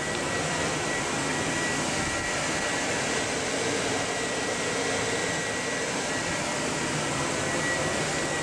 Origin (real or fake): real